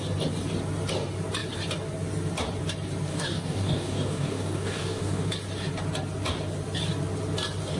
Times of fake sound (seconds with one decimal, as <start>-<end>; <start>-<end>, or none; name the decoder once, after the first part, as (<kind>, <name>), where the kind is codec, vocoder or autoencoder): 3.1-5.3 (codec, DAC)